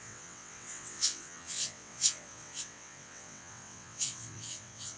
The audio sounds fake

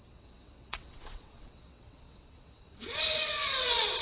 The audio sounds fake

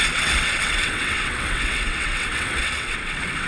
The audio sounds fake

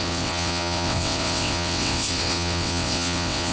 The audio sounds fake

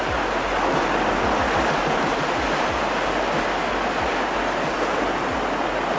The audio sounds real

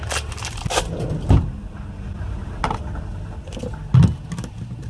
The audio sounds real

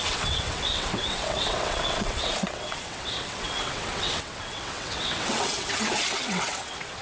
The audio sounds fake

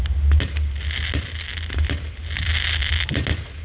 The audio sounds real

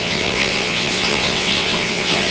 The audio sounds fake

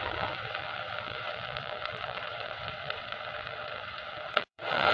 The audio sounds fake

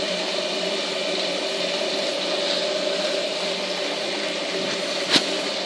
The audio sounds real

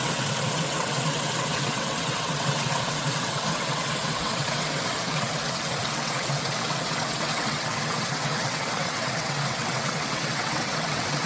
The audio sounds fake